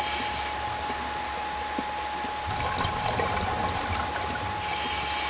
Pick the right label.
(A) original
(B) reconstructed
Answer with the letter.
A